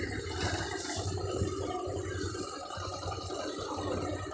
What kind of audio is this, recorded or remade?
recorded